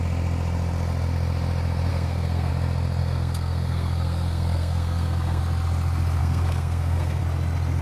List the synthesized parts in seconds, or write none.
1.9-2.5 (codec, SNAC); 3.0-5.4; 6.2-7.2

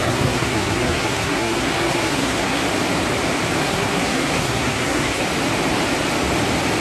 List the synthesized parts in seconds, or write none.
0.0-2.6 (codec, SNAC); 3.6-5.2

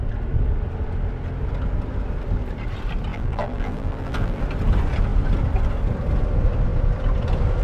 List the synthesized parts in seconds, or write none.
3.1-4.4 (vocoder, BigVGAN v2)

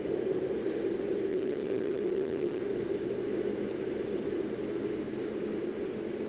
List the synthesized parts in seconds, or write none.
1.3-2.6 (vocoder, HiFi-GAN)

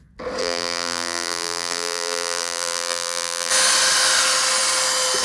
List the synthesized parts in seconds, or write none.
0.4-3.5 (vocoder, BigVGAN v2)

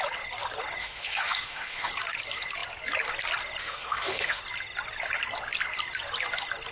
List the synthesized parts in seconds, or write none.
0.8-1.9 (autoencoder, DAC-VAE); 3.6-4.4

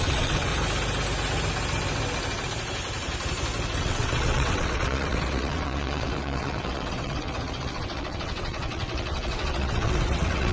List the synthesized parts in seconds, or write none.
0.0-0.5 (vocoder, WaveNeXt); 3.8-10.5